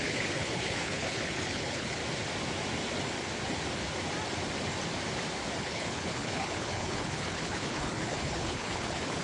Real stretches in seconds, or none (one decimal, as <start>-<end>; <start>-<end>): 2.0-5.6